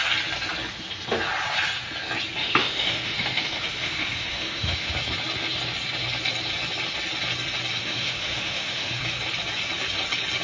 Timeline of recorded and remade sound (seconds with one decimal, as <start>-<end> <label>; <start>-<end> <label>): 0.0-2.4 recorded; 2.4-4.9 remade; 4.9-7.8 recorded; 7.8-9.0 remade; 9.0-10.4 recorded